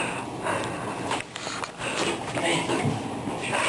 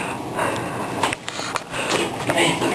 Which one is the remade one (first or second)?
first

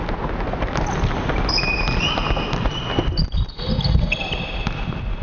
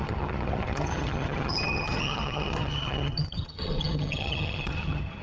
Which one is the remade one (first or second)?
second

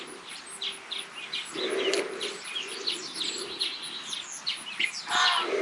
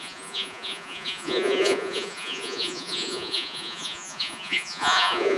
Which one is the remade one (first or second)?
second